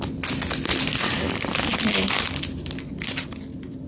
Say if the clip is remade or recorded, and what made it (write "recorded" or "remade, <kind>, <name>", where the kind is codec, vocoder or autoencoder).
recorded